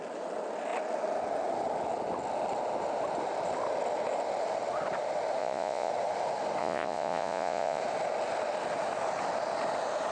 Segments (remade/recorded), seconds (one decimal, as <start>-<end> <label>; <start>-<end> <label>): 0.0-5.4 recorded; 5.4-5.9 remade; 5.9-6.6 recorded; 6.6-7.8 remade; 7.8-10.1 recorded